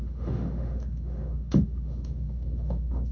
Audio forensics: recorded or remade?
remade